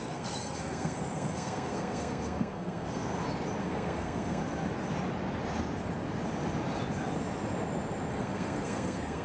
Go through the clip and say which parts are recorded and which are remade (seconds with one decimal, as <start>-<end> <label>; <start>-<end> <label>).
0.0-3.1 remade; 3.1-3.6 recorded; 3.6-4.4 remade; 4.4-8.1 recorded; 8.1-9.2 remade